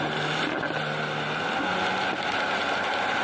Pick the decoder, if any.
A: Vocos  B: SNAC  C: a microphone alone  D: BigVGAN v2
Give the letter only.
C